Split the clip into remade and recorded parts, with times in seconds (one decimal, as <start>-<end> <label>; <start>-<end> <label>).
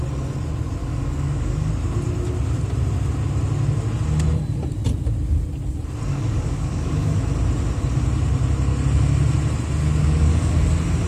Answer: 0.0-0.8 recorded; 0.8-1.7 remade; 1.7-6.1 recorded; 6.1-7.2 remade; 7.2-10.0 recorded; 10.0-10.5 remade; 10.5-11.1 recorded